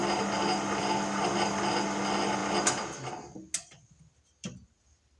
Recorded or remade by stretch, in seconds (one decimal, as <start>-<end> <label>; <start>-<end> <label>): 0.0-5.2 recorded